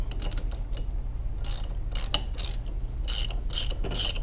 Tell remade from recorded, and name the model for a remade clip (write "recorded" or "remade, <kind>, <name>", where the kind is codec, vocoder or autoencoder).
recorded